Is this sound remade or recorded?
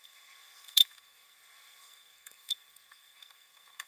remade